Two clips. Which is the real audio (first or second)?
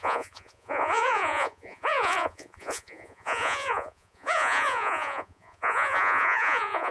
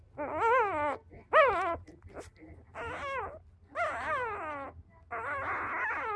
second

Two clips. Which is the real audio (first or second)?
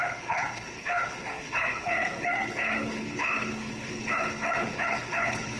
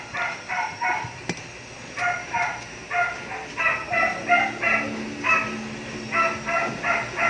second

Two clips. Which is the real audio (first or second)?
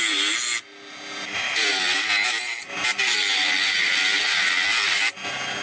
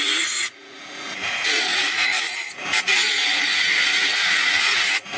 first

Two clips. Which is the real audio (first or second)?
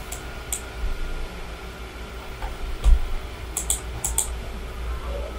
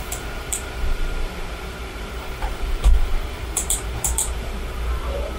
first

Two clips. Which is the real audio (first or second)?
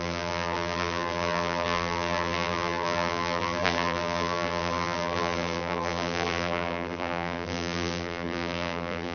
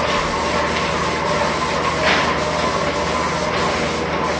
second